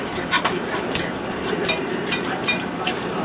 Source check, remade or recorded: remade